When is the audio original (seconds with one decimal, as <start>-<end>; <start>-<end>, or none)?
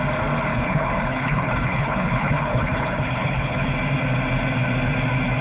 0.0-0.5; 3.7-5.4